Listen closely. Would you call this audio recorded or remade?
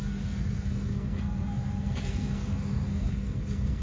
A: remade